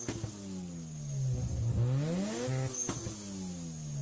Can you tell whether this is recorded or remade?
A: recorded